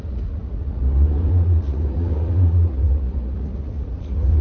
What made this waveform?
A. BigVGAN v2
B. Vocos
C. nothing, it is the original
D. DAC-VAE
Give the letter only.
B